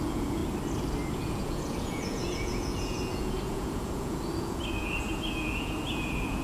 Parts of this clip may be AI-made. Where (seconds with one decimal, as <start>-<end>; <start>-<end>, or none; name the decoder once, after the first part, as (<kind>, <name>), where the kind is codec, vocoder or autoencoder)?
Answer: 0.0-0.4 (vocoder, Vocos); 1.1-6.4